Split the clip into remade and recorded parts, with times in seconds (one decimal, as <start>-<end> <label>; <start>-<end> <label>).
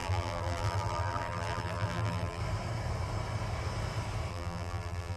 0.0-2.4 remade; 2.4-4.3 recorded; 4.3-5.2 remade